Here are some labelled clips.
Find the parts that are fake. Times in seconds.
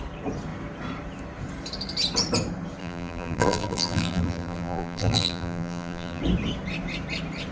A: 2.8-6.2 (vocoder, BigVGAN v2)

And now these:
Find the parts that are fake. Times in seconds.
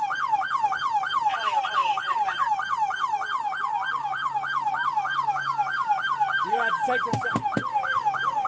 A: none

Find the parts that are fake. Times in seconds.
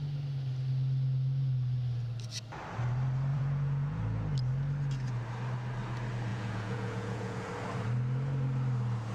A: 3.3-4.0 (vocoder, Vocos); 6.3-7.5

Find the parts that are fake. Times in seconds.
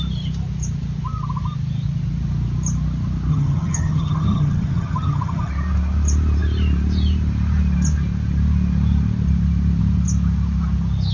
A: 3.3-5.5 (vocoder, HiFi-GAN)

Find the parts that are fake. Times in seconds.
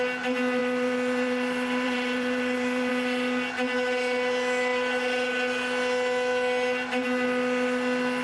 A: 0.6-2.9 (vocoder, BigVGAN v2)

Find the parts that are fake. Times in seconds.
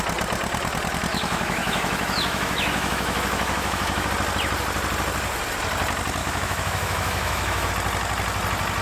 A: 1.1-4.1 (autoencoder, DAC-VAE); 6.2-7.7